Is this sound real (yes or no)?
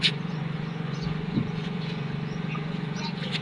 no